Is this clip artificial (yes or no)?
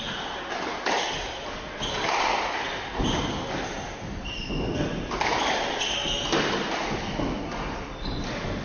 no